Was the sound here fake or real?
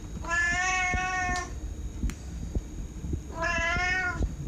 real